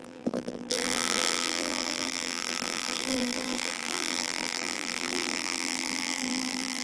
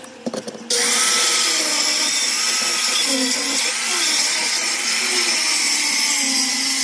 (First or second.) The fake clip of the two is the first